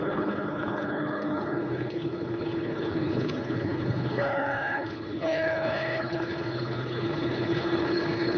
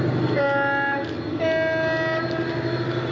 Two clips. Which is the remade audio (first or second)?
first